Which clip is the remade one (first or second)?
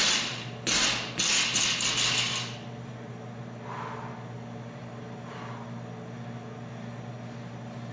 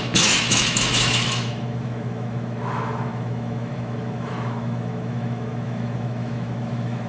second